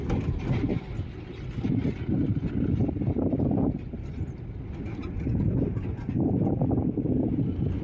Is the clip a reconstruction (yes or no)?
no